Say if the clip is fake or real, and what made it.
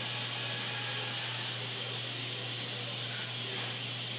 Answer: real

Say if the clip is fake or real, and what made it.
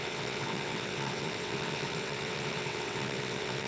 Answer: fake, vocoder, WaveNeXt